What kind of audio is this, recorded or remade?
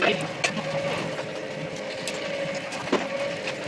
recorded